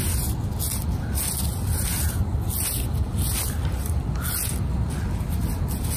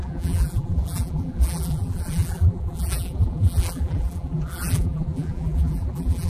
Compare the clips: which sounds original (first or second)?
first